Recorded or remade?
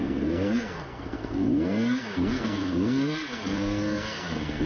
remade